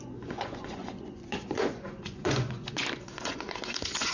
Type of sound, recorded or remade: remade